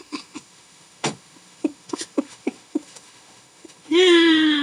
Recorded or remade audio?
remade